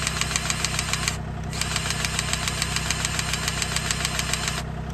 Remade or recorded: recorded